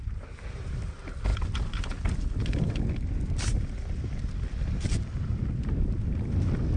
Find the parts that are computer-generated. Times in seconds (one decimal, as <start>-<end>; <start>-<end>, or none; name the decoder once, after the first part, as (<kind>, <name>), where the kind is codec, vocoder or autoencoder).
none